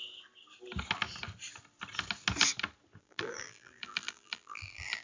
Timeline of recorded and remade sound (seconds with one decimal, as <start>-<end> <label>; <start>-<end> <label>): 0.0-3.0 recorded; 3.0-5.0 remade